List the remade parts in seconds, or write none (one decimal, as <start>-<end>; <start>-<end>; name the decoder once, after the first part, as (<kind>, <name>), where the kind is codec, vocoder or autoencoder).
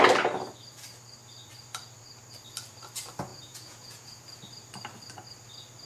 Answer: 3.3-4.2 (vocoder, Vocos)